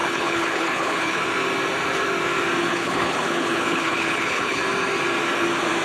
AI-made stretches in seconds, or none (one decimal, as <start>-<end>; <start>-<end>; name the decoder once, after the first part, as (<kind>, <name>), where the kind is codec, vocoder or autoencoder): 0.0-1.2 (codec, HILCodec); 2.7-4.6